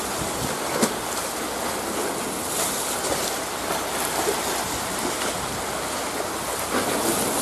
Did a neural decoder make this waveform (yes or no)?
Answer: no